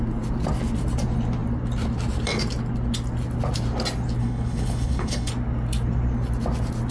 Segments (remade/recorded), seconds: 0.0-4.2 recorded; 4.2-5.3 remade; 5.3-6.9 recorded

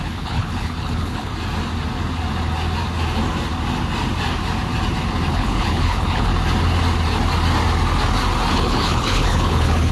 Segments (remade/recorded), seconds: 0.0-1.3 remade; 1.3-5.3 recorded; 5.3-6.3 remade; 6.3-8.5 recorded; 8.5-9.9 remade

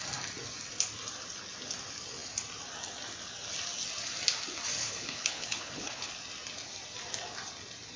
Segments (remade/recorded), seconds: 0.0-4.8 recorded; 4.8-6.1 remade; 6.1-8.0 recorded

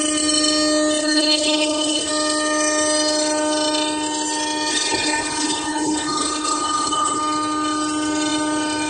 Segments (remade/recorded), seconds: 0.0-1.0 recorded; 1.0-2.1 remade; 2.1-4.7 recorded; 4.7-7.2 remade; 7.2-8.9 recorded

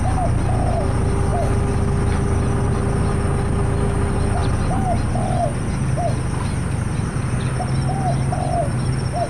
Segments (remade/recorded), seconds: 0.0-9.3 recorded

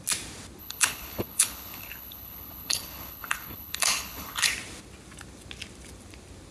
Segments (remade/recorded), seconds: 0.0-0.6 recorded; 0.6-4.5 remade; 4.5-6.5 recorded